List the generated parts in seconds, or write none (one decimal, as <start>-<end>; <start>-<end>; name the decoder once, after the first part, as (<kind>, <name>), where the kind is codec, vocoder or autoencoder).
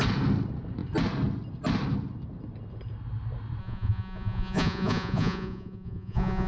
3.6-6.5 (vocoder, Vocos)